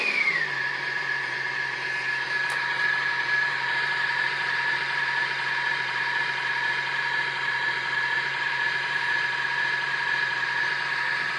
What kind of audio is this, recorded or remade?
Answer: remade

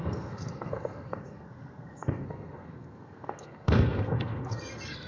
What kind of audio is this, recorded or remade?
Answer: remade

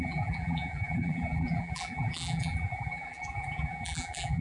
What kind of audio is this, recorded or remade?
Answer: remade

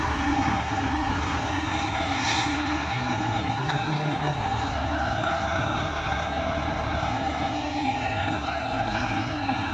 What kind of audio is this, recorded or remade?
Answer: remade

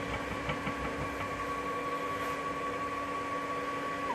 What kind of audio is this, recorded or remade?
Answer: recorded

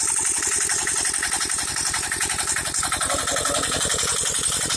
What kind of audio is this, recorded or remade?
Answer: recorded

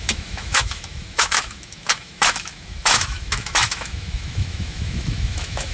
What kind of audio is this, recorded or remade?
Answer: remade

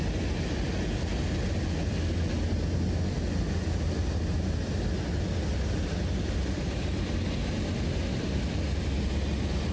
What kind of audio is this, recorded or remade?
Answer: recorded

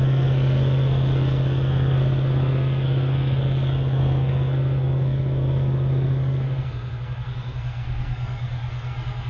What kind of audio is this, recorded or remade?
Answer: remade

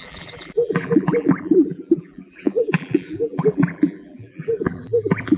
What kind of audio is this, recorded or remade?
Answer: remade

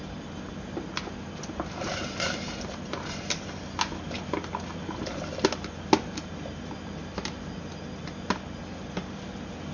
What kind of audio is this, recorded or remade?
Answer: recorded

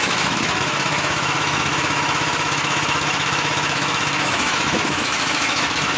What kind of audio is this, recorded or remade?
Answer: remade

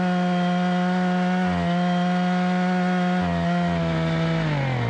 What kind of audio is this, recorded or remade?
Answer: recorded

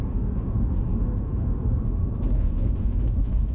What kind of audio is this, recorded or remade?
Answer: remade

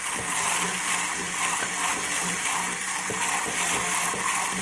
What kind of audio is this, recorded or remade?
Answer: recorded